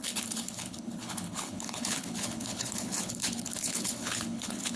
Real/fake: fake